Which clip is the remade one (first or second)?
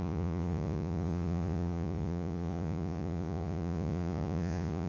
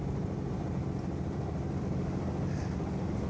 first